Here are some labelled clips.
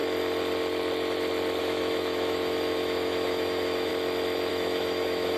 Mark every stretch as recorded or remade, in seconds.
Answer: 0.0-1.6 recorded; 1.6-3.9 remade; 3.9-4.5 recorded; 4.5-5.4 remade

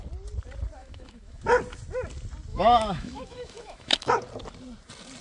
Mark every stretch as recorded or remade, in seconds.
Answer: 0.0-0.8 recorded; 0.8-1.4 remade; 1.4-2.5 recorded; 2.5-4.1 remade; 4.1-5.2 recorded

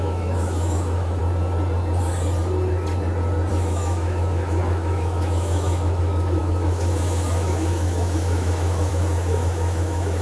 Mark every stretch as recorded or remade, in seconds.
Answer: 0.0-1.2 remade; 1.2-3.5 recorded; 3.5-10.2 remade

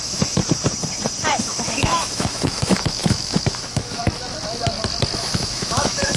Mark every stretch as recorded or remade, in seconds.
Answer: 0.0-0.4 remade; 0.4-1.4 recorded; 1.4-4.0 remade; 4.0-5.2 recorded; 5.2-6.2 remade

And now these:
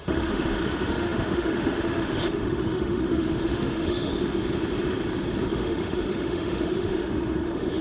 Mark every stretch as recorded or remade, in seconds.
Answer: 0.0-4.1 remade; 4.1-5.5 recorded; 5.5-7.8 remade

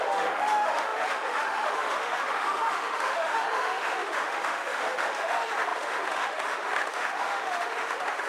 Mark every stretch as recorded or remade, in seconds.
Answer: 0.0-8.3 remade

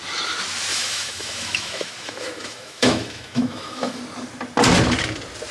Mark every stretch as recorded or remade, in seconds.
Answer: 0.0-0.7 recorded; 0.7-4.0 remade; 4.0-5.5 recorded